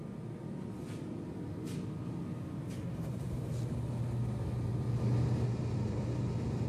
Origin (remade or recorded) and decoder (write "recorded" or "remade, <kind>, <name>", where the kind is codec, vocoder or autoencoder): recorded